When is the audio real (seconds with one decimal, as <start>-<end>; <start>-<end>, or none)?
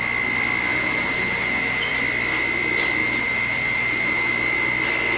0.0-0.7; 1.9-3.0; 4.3-5.2